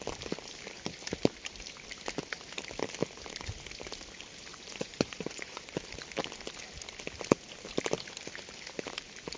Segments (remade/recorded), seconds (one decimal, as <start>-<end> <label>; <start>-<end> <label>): 0.0-4.5 recorded; 4.5-5.7 remade; 5.7-9.4 recorded